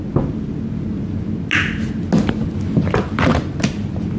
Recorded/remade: recorded